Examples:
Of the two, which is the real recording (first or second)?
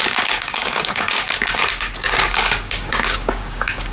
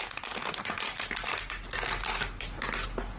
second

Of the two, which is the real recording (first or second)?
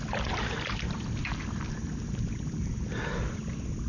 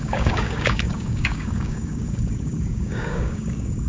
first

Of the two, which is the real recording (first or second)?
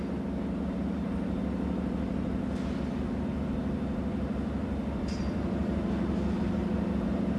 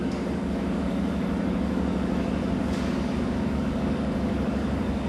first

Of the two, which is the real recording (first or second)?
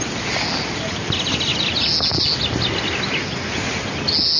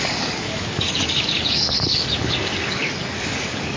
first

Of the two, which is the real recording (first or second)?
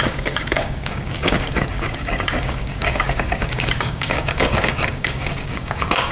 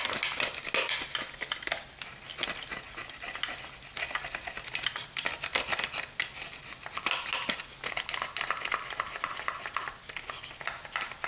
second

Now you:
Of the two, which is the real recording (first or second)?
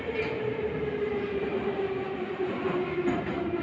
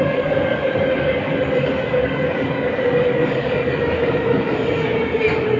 first